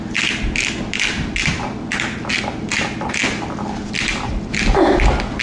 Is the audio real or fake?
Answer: real